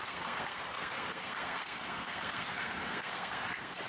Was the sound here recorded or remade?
remade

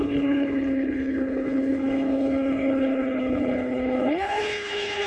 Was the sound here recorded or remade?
remade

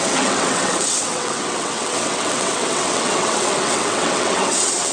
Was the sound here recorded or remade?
remade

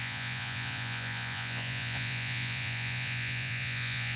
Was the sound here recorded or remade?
remade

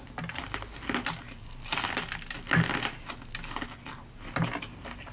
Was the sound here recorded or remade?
recorded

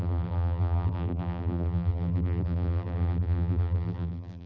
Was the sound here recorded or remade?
remade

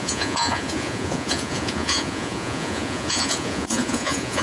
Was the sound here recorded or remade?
remade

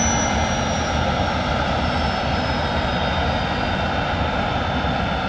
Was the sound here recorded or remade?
recorded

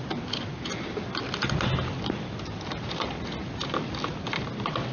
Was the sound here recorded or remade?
recorded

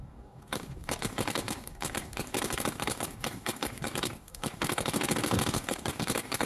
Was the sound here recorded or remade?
remade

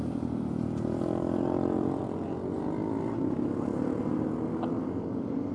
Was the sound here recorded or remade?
recorded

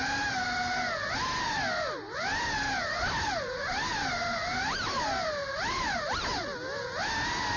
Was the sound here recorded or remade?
recorded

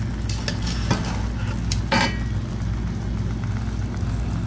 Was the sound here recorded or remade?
recorded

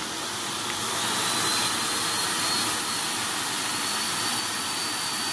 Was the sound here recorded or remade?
recorded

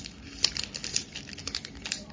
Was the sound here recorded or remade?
recorded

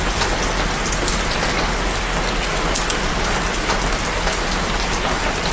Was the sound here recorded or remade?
recorded